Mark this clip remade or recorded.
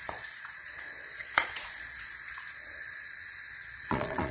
remade